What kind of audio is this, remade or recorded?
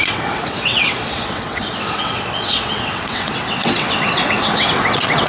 remade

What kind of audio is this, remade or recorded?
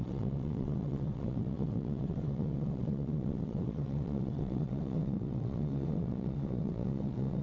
remade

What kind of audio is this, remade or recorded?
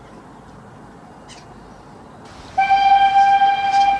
recorded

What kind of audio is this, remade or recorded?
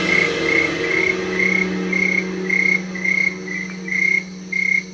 recorded